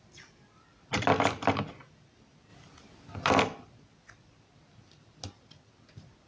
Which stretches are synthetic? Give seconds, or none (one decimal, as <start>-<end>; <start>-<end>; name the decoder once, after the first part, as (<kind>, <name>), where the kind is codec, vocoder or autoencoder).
none